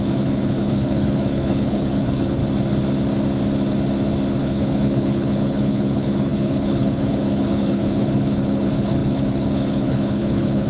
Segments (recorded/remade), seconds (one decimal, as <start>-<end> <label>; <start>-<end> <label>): 0.0-2.4 remade; 2.4-4.4 recorded; 4.4-10.7 remade